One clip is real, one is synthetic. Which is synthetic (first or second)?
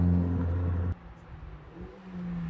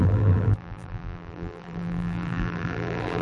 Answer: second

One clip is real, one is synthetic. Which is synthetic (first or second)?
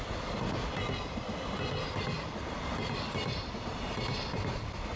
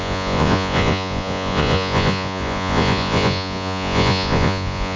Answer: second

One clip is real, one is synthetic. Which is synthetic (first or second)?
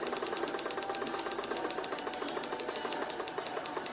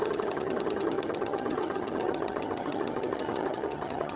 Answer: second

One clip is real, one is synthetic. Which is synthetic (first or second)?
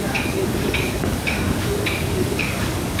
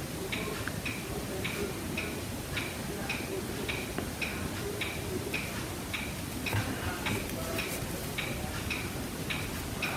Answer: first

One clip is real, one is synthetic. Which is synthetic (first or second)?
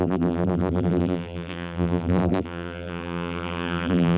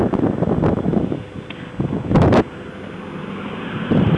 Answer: first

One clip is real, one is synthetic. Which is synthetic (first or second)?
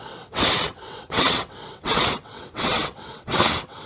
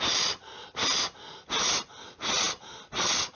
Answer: first